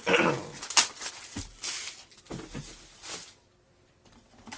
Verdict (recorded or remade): recorded